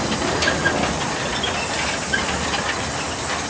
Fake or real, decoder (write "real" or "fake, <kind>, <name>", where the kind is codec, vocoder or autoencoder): real